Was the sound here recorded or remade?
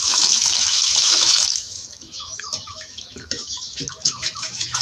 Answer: remade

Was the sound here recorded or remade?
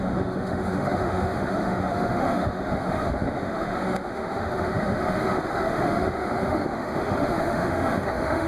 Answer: remade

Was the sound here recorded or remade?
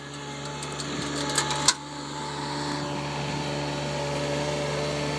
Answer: recorded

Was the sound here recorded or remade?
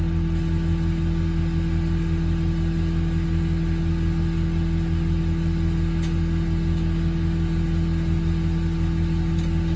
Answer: recorded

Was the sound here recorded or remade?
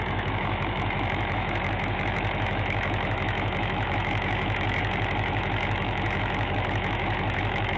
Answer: remade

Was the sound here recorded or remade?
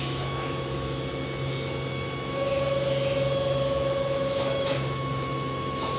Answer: remade